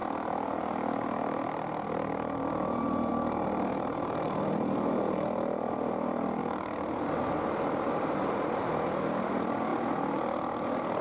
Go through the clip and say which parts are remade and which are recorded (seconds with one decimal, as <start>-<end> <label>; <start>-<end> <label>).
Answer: 0.0-1.0 recorded; 1.0-9.7 remade; 9.7-11.0 recorded